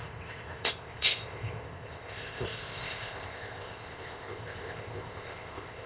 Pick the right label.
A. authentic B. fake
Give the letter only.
B